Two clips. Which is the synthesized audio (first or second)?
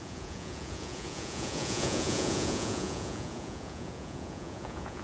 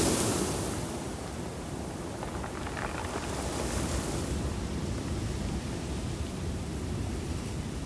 first